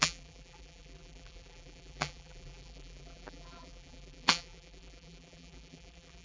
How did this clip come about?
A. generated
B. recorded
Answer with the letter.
A